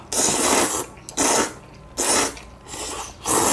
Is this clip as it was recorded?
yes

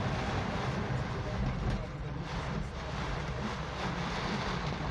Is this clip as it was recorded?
yes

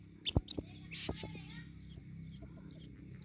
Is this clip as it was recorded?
yes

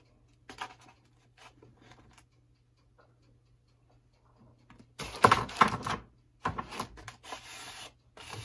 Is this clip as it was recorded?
yes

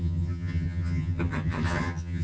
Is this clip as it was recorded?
no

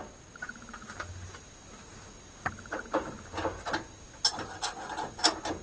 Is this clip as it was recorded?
yes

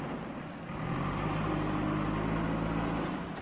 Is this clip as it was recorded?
yes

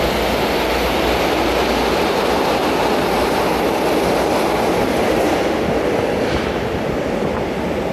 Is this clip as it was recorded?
yes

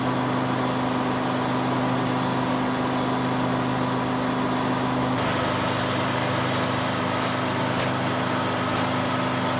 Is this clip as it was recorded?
yes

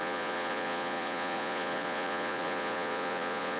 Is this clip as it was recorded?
no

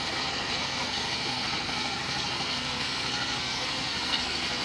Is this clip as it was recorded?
no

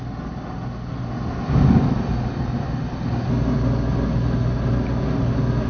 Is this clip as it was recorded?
yes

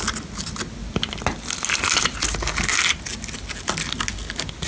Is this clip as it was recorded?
yes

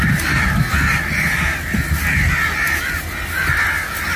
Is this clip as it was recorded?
yes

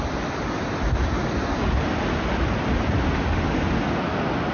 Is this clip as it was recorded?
yes